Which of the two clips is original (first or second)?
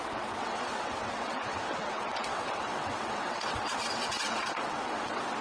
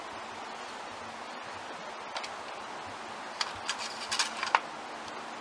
second